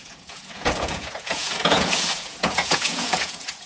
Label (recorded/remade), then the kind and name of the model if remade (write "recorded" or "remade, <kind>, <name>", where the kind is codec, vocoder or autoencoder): remade, vocoder, Vocos